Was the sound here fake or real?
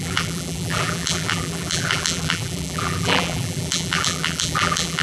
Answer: fake